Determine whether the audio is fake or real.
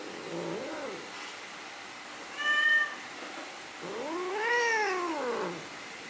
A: real